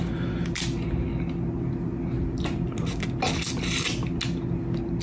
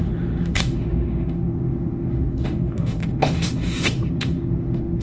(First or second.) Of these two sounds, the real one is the first